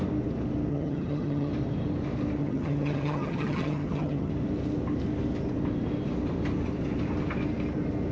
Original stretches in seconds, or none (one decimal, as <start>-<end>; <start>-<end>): 0.0-0.7; 1.5-2.4; 4.3-8.1

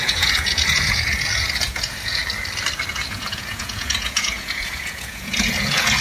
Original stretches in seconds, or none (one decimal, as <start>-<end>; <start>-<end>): 2.2-2.9

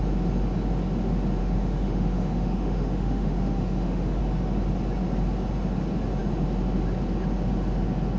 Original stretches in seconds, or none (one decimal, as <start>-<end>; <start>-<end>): 0.0-1.4; 4.2-8.2

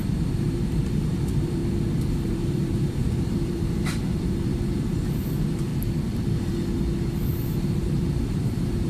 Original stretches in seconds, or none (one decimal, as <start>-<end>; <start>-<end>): 1.6-2.1; 5.7-7.6